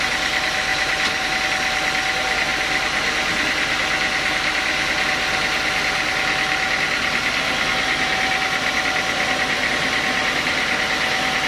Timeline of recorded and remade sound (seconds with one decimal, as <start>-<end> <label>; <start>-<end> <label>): 0.0-0.7 recorded; 0.7-1.4 remade; 1.4-11.5 recorded